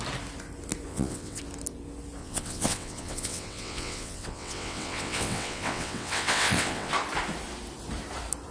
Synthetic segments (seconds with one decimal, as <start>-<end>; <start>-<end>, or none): 0.9-1.4; 2.2-6.9